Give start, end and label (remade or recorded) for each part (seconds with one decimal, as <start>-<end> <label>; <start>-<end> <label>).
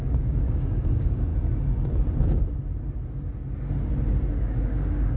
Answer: 0.0-1.3 remade; 1.3-4.3 recorded; 4.3-5.2 remade